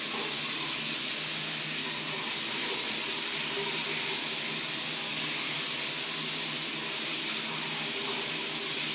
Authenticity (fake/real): real